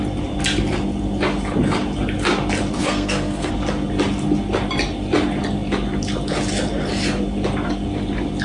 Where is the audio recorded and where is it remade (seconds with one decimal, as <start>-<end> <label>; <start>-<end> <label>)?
0.0-2.8 recorded; 2.8-3.5 remade; 3.5-8.4 recorded